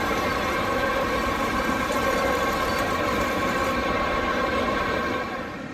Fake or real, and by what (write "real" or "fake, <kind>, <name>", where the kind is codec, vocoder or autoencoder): fake, vocoder, BigVGAN v2